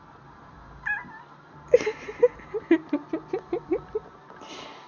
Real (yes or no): yes